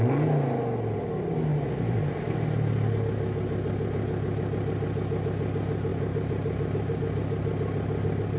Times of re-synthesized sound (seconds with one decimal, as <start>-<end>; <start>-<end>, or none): 1.5-2.2; 5.9-7.0